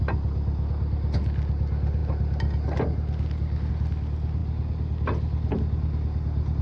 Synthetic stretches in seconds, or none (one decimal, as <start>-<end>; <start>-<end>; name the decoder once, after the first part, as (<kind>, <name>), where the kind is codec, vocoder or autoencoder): none